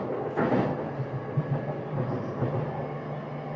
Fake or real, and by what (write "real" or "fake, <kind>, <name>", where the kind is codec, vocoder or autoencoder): real